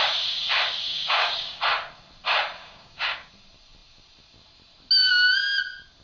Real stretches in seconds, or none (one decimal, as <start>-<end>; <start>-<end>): 0.0-0.9; 1.6-2.6; 3.3-6.0